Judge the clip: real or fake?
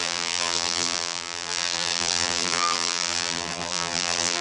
fake